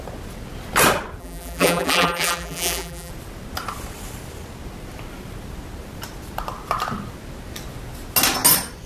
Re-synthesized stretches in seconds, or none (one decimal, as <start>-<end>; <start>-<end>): 1.2-3.1